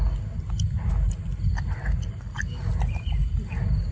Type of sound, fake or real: real